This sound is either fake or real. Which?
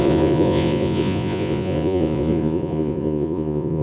fake